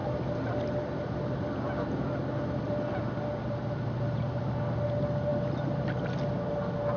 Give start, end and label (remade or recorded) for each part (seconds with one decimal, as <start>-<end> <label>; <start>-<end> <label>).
0.0-7.0 recorded